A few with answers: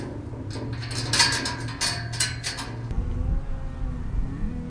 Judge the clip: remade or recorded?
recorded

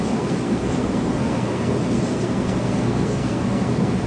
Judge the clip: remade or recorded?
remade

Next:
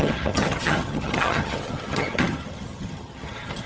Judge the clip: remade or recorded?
remade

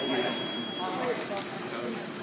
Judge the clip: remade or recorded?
recorded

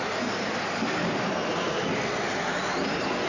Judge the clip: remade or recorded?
recorded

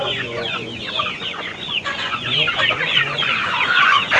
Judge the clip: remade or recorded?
remade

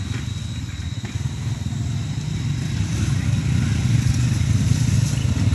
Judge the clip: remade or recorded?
recorded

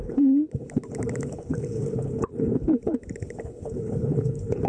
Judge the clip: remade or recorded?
remade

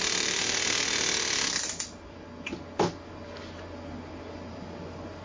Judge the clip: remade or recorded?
recorded